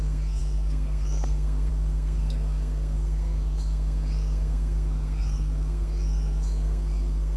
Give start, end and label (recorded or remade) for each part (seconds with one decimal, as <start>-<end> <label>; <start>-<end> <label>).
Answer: 0.0-7.4 remade